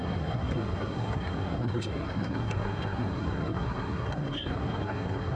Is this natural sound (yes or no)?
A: no